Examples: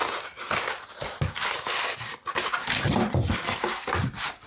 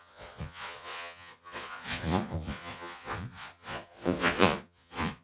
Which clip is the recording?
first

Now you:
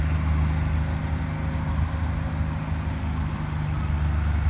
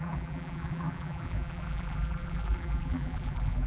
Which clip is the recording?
first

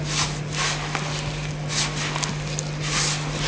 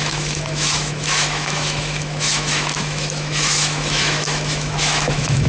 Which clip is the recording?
first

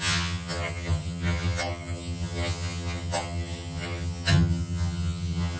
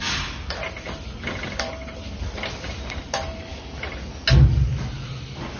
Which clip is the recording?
second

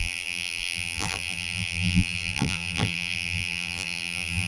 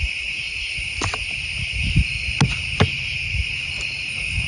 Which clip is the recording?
second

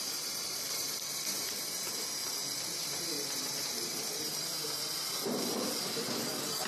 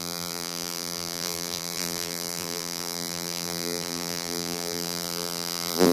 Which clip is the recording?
first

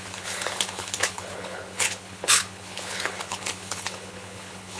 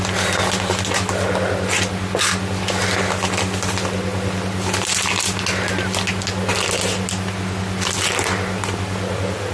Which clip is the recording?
second